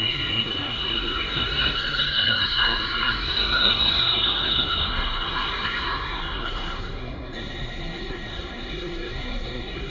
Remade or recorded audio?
remade